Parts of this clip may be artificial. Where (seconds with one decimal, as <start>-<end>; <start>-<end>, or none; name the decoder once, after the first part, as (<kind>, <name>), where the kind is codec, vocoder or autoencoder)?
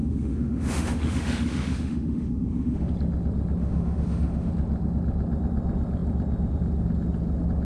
0.0-2.9 (autoencoder, DAC-VAE); 3.6-4.5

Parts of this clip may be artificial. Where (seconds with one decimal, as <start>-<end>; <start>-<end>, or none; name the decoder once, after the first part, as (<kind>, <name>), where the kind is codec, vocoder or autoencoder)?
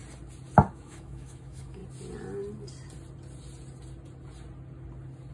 0.7-1.8 (autoencoder, DAC-VAE)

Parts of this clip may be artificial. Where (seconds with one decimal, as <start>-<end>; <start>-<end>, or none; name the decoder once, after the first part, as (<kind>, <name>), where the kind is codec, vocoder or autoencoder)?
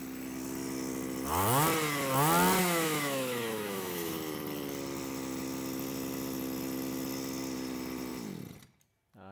2.6-4.1 (autoencoder, DAC-VAE)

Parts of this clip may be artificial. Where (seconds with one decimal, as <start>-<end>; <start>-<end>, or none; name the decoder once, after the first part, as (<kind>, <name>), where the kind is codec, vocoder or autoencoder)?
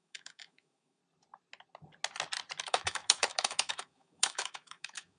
0.0-1.0 (autoencoder, DAC-VAE); 2.6-5.2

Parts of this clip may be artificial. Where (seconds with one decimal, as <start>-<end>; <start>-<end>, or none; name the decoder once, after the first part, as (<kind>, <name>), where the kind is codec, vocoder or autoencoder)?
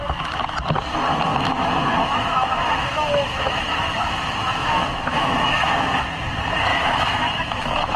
1.3-6.0 (autoencoder, DAC-VAE); 6.7-8.0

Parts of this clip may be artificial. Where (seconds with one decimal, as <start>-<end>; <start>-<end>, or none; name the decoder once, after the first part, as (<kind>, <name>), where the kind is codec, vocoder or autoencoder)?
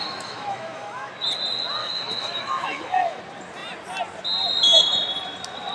0.0-1.1 (autoencoder, DAC-VAE); 1.8-3.2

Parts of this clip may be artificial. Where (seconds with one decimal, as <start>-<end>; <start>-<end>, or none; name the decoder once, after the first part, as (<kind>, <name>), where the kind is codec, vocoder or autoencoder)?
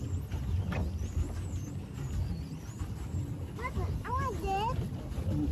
none